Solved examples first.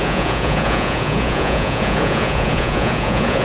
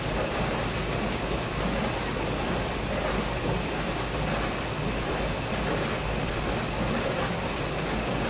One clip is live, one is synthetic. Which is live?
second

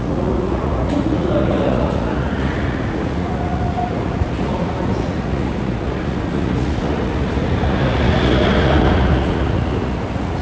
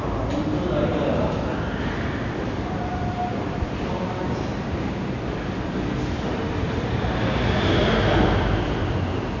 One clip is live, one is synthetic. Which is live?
second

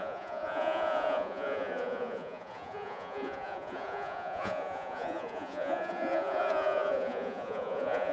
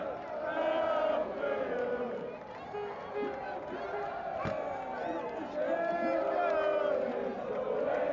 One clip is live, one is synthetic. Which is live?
second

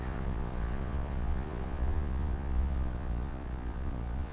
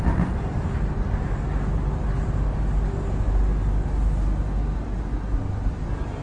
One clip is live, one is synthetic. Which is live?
second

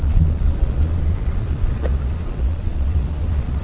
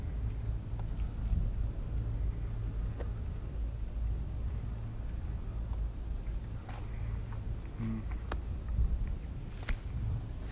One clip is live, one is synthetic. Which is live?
second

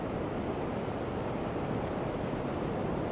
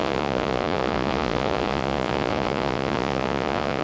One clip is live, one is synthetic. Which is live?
first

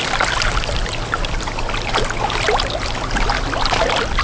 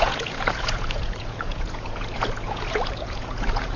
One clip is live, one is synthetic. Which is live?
first